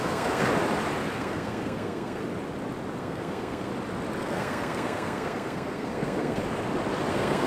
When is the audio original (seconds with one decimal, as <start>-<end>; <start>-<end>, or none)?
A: 0.4-1.1; 2.2-3.0; 3.7-4.2; 6.4-7.1